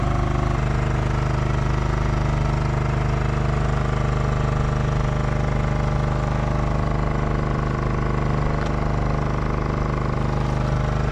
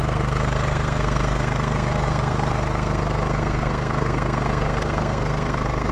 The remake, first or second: second